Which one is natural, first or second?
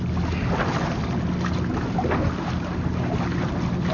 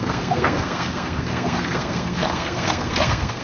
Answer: first